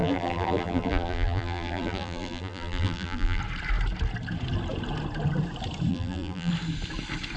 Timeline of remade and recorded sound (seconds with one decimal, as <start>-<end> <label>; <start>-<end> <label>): 0.0-3.4 remade; 3.4-5.9 recorded; 5.9-6.5 remade; 6.5-7.4 recorded